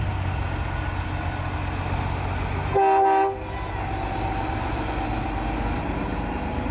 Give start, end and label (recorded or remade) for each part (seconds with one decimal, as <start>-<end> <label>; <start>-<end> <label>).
0.0-6.7 recorded